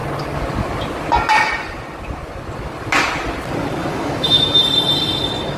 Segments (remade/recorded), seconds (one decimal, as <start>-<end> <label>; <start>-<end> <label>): 0.0-3.8 recorded; 3.8-4.6 remade; 4.6-5.6 recorded